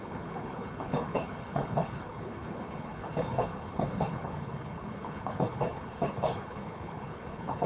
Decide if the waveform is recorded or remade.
remade